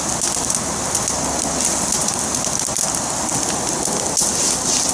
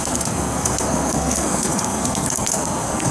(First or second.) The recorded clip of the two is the first